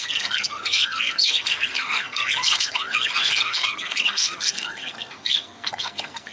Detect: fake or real fake